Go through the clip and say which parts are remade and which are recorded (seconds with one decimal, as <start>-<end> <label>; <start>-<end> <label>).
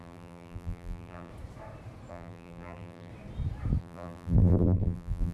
0.0-1.3 remade; 1.3-2.1 recorded; 2.1-3.1 remade; 3.1-3.8 recorded; 3.8-5.3 remade